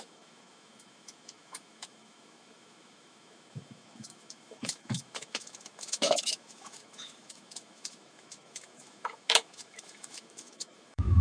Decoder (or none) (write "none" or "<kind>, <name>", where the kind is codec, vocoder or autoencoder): autoencoder, DAC-VAE